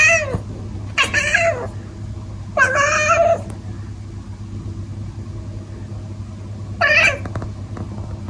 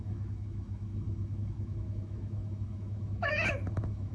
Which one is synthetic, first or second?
second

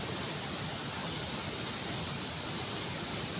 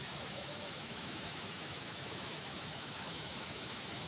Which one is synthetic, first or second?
second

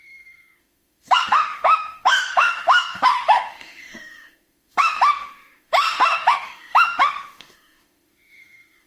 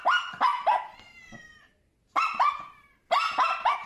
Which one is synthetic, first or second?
first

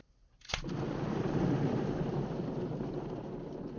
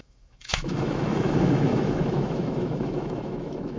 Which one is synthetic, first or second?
second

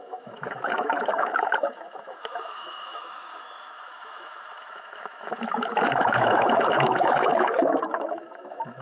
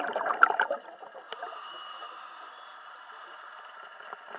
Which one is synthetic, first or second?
first